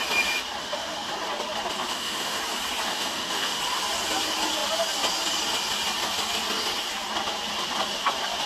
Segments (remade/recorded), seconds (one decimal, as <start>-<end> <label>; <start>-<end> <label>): 0.0-0.6 recorded; 0.6-1.1 remade; 1.1-1.9 recorded; 1.9-2.4 remade; 2.4-2.9 recorded; 2.9-3.6 remade; 3.6-8.5 recorded